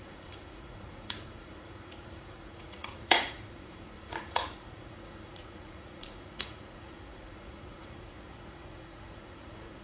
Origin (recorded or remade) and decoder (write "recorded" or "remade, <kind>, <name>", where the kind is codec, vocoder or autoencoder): remade, vocoder, Vocos